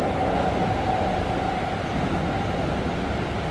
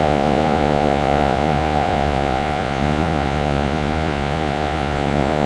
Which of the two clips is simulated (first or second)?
second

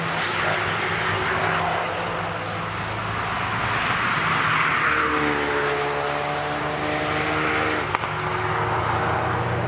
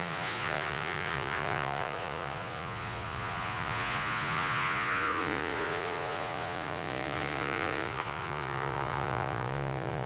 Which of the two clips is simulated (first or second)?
second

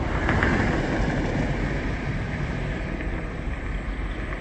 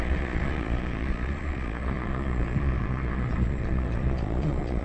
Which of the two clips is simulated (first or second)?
second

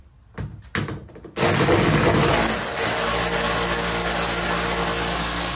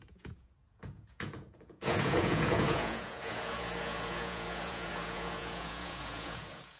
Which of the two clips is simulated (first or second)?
second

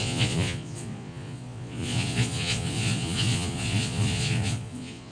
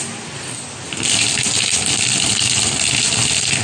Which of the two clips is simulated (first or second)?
first